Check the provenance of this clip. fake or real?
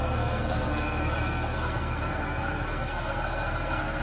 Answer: fake